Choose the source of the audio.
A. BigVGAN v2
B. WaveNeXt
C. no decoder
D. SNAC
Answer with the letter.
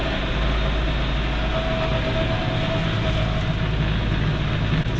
C